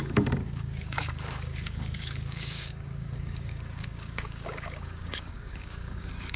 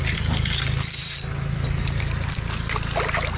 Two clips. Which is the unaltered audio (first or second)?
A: second